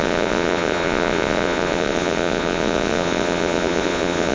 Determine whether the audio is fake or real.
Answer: fake